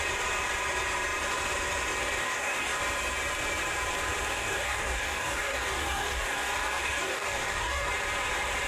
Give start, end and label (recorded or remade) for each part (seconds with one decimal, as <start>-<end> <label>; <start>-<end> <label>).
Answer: 0.0-2.2 recorded; 2.2-2.8 remade; 2.8-4.3 recorded; 4.3-7.9 remade; 7.9-8.7 recorded